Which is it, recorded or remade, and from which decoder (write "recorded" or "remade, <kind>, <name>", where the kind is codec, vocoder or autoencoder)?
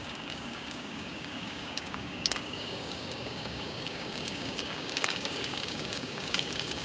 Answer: remade, codec, DAC